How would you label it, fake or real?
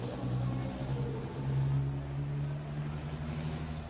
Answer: real